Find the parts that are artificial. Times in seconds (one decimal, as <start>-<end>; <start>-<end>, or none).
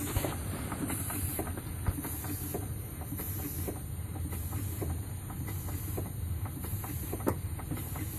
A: 6.6-7.2